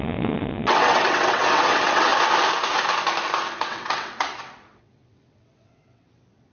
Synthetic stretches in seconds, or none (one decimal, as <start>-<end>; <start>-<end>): 0.0-2.1; 3.6-6.5